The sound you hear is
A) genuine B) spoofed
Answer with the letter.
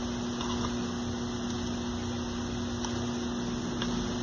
A